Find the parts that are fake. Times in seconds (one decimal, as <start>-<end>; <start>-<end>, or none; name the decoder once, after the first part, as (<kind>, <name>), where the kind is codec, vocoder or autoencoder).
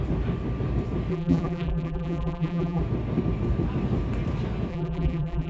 1.1-2.8 (vocoder, BigVGAN v2); 4.7-5.5